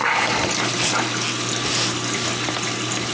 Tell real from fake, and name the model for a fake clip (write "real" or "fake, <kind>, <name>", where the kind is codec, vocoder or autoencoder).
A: real